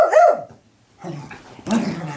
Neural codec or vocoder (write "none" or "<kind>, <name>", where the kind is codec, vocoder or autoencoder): none